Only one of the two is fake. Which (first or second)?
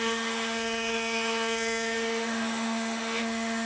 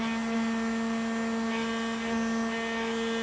first